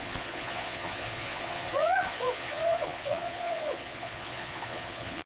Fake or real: fake